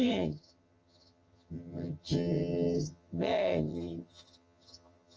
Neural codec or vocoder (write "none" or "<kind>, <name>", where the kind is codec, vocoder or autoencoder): vocoder, HiFi-GAN